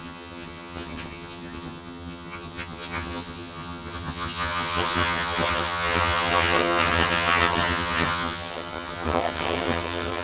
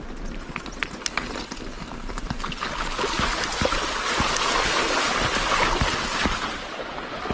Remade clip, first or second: first